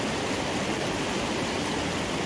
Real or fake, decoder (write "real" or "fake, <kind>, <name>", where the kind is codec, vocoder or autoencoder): real